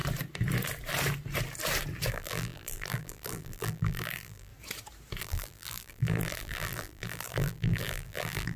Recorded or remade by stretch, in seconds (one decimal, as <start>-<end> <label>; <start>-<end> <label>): 0.0-2.1 recorded; 2.1-4.5 remade; 4.5-5.2 recorded; 5.2-8.6 remade